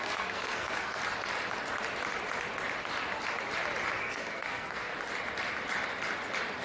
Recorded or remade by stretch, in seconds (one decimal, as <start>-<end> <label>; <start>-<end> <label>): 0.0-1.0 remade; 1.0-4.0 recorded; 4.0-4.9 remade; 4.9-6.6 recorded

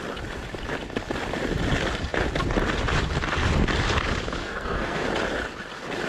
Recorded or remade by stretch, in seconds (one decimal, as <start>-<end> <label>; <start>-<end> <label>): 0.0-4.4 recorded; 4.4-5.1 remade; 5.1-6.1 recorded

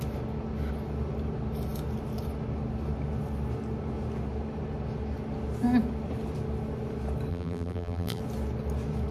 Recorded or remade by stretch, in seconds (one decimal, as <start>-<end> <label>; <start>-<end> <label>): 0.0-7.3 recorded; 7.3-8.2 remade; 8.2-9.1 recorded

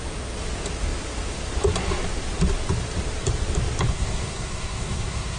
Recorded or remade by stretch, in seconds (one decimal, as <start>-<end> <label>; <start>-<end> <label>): 0.0-3.9 recorded; 3.9-5.4 remade

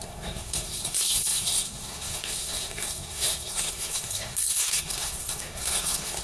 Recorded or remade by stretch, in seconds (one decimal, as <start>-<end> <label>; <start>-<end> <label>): 0.0-6.2 remade

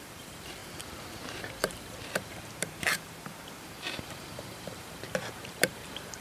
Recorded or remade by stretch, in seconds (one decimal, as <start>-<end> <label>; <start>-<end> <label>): 0.0-0.6 remade; 0.6-1.2 recorded; 1.2-6.2 remade

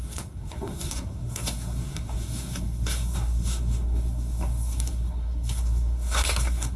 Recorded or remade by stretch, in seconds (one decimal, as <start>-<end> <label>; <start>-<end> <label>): 0.0-6.8 remade

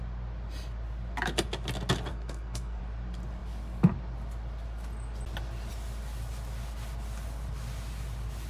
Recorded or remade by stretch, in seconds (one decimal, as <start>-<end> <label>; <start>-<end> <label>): 0.0-2.1 recorded; 2.1-2.8 remade; 2.8-8.5 recorded